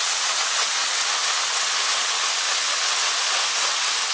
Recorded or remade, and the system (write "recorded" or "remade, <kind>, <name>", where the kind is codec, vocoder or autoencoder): remade, vocoder, WaveNeXt